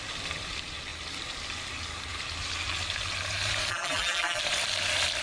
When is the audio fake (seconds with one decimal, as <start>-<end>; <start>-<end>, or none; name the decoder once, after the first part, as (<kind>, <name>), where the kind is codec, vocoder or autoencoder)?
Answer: 3.7-4.4 (vocoder, BigVGAN v2)